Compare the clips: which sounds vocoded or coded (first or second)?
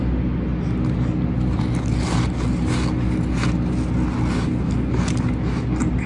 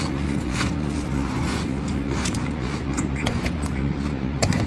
second